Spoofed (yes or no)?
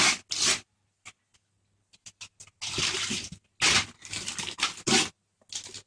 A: no